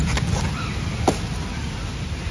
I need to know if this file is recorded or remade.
recorded